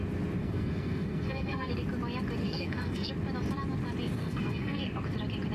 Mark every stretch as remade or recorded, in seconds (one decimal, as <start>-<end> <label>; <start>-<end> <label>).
0.0-0.4 recorded; 0.4-1.7 remade; 1.7-2.4 recorded; 2.4-3.1 remade; 3.1-4.2 recorded; 4.2-4.8 remade; 4.8-5.5 recorded